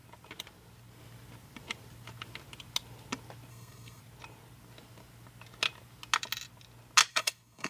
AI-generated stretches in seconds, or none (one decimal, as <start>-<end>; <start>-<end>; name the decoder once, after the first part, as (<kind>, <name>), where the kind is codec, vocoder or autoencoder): 3.5-4.0 (codec, SNAC); 7.1-7.7